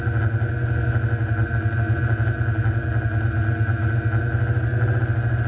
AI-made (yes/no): no